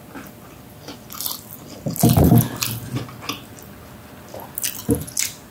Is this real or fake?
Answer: real